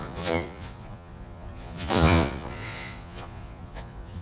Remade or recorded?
remade